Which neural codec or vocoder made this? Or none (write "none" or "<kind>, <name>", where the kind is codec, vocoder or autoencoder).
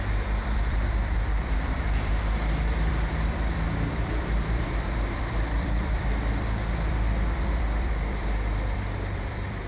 vocoder, BigVGAN v2